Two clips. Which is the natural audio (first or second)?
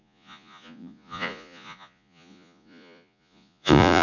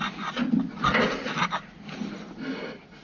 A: second